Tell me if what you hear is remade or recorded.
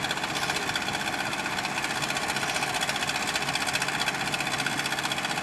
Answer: recorded